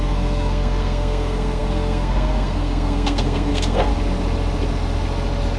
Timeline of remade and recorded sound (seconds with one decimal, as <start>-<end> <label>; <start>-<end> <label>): 0.0-3.9 remade; 3.9-5.6 recorded